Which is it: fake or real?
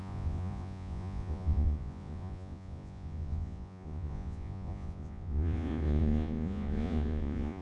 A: fake